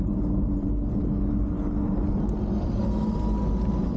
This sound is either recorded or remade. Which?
recorded